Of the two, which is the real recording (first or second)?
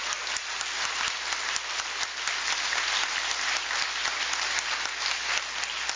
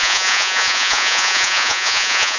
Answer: first